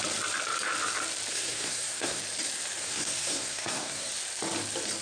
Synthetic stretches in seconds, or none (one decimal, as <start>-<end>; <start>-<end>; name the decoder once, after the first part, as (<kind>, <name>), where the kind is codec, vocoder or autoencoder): 1.3-2.2 (codec, SNAC); 2.8-4.1